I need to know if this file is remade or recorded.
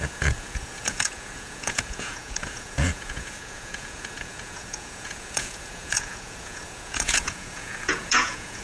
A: remade